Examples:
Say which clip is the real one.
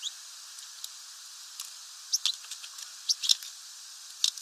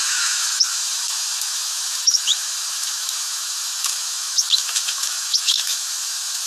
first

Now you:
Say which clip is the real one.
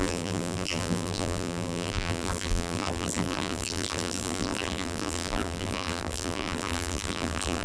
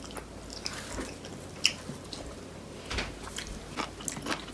second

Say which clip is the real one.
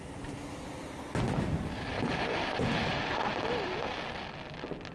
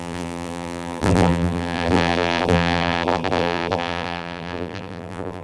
first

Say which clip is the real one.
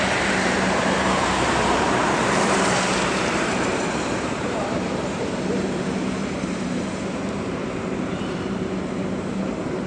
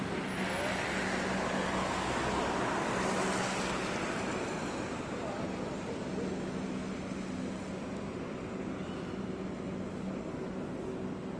second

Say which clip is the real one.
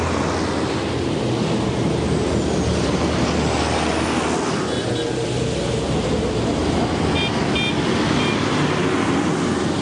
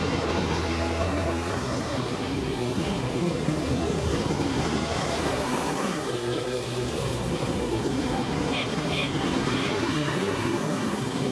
first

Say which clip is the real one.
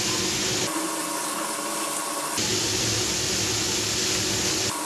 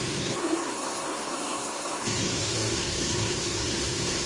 first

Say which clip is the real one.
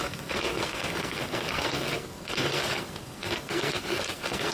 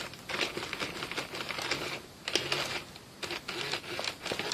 second